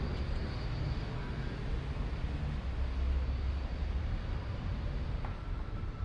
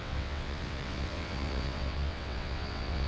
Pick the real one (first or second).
first